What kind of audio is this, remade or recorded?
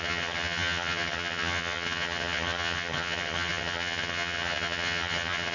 remade